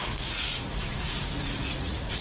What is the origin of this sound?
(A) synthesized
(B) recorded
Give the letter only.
A